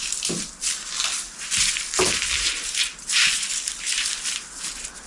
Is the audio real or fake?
real